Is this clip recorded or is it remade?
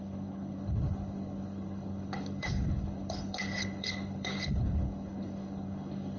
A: remade